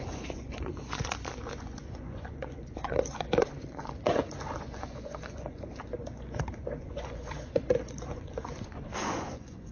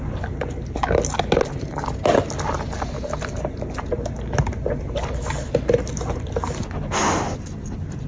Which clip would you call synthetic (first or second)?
first